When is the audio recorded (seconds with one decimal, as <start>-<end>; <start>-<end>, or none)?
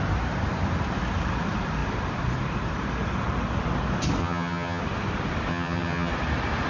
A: 0.0-4.2; 4.8-5.5; 6.1-6.7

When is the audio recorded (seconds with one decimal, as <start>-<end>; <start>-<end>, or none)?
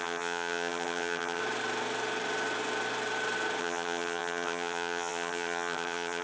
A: 1.4-3.6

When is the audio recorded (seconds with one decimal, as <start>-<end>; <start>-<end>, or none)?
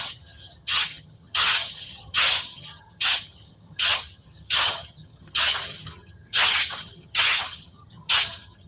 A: none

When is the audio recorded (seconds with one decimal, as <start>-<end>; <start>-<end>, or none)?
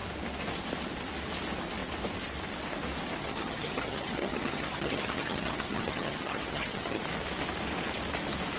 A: 0.0-3.2; 7.0-8.6